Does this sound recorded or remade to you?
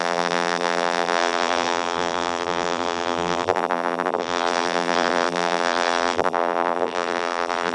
remade